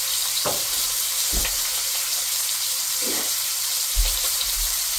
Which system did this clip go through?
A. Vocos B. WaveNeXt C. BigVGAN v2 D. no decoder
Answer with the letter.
C